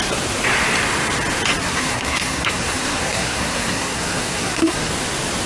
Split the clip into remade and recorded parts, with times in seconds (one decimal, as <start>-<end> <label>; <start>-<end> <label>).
0.0-1.6 recorded; 1.6-4.9 remade; 4.9-5.5 recorded